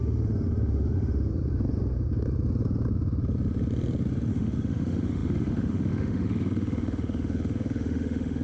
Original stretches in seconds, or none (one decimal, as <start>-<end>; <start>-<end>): 1.3-4.3